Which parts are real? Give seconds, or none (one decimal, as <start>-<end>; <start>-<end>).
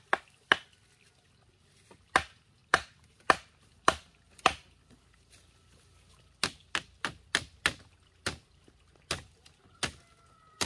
0.0-2.6; 3.1-10.7